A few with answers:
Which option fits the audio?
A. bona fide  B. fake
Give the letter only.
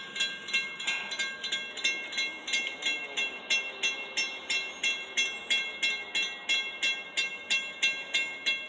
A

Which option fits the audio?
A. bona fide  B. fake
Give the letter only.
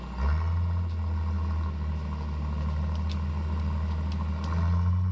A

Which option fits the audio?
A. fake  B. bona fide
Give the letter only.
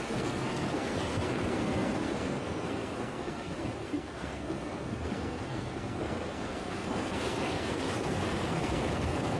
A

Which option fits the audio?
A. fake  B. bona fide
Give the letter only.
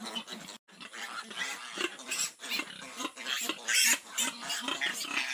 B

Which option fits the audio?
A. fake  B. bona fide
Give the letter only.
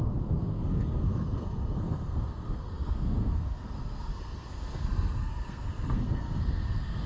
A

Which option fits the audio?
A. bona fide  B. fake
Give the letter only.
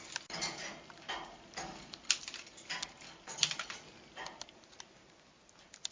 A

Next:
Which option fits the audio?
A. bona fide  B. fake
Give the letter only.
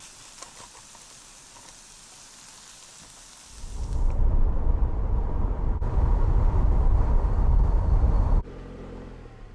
A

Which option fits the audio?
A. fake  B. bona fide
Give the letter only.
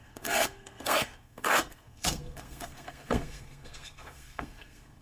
A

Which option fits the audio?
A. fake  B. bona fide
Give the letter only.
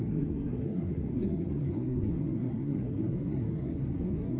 A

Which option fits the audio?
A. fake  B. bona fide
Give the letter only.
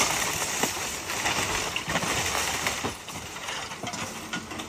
B